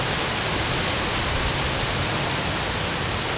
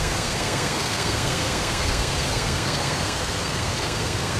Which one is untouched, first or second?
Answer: first